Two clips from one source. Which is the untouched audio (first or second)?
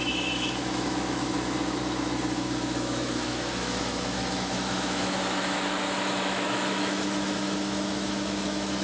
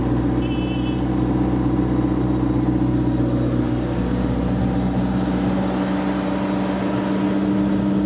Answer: second